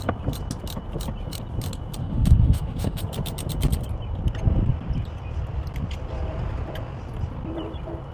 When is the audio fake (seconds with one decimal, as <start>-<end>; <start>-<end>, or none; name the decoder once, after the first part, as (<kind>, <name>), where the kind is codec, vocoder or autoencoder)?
2.0-3.0 (autoencoder, DAC-VAE)

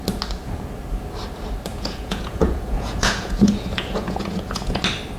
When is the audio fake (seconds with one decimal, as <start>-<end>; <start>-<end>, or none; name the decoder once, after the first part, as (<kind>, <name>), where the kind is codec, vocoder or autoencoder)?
1.7-4.8 (vocoder, Vocos)

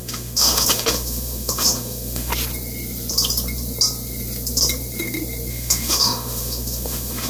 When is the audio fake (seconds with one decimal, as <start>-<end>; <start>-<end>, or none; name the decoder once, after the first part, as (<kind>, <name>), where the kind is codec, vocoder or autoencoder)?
0.0-2.3 (autoencoder, DAC-VAE); 5.5-7.3

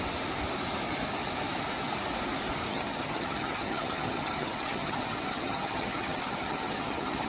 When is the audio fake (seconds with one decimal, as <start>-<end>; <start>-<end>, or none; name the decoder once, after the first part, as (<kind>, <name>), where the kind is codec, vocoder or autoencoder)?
2.7-7.3 (vocoder, HiFi-GAN)

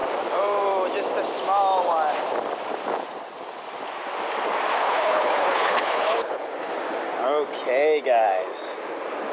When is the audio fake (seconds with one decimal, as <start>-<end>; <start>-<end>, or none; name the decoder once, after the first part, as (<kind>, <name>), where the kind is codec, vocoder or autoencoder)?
4.8-6.5 (codec, HILCodec)